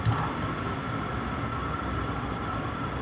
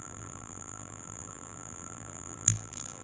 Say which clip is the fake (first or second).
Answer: second